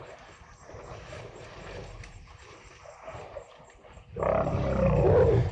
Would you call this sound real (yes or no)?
no